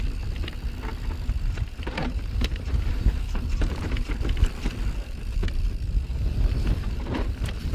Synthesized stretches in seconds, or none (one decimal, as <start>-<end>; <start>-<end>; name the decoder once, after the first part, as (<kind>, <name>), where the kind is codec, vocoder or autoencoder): 2.0-4.1 (vocoder, BigVGAN v2); 6.1-7.7